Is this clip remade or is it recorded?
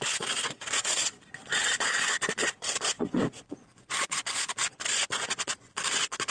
remade